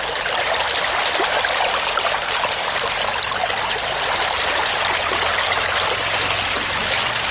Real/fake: real